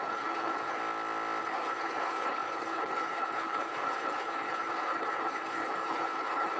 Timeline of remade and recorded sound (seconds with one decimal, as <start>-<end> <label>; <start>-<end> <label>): 0.0-0.8 remade; 0.8-1.4 recorded; 1.4-6.6 remade